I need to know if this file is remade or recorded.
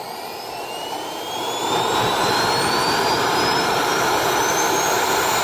remade